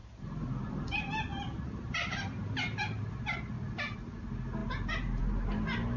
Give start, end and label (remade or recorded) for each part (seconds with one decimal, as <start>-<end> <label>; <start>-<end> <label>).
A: 0.0-0.8 remade; 0.8-1.3 recorded; 1.3-3.0 remade; 3.0-6.0 recorded